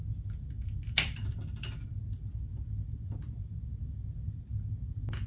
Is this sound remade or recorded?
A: recorded